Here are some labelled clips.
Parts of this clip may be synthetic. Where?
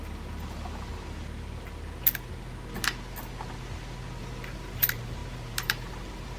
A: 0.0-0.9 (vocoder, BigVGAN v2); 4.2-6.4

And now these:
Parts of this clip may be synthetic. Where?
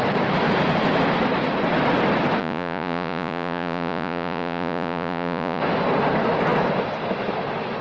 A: 2.4-5.6 (vocoder, Vocos)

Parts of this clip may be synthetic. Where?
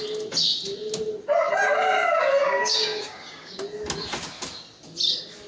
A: 2.4-3.6 (codec, DAC)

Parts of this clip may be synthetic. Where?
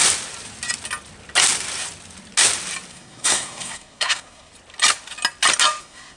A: 2.9-4.5 (codec, SNAC); 5.8-6.2